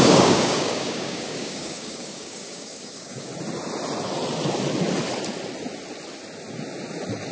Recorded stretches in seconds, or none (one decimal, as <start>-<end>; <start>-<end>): 3.3-7.3